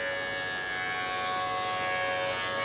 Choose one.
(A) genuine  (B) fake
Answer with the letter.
A